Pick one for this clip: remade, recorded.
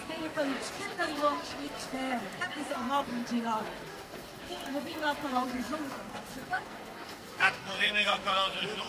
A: remade